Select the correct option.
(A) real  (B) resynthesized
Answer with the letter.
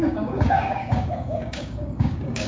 B